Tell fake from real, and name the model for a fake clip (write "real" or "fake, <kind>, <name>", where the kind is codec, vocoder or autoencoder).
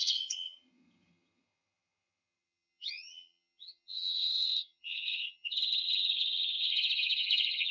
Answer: fake, vocoder, HiFi-GAN